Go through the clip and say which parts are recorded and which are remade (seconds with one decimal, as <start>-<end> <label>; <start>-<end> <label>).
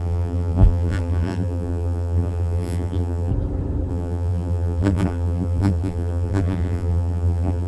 0.0-3.3 remade; 3.3-3.9 recorded; 3.9-7.7 remade